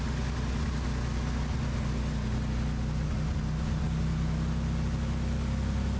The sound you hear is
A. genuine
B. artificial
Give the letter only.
A